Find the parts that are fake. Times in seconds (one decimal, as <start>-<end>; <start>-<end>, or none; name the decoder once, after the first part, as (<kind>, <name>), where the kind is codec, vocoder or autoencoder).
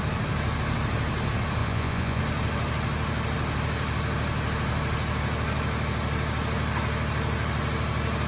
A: 1.6-2.2 (vocoder, Vocos)